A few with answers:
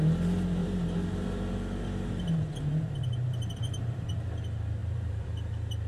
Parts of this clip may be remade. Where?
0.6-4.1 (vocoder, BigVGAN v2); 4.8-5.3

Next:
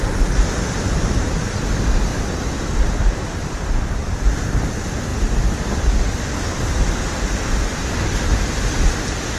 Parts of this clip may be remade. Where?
2.1-3.5 (vocoder, BigVGAN v2); 8.3-8.9

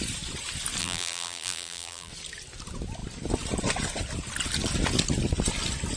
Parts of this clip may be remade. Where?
0.8-2.1 (vocoder, BigVGAN v2)